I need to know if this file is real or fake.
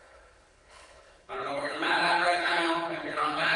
fake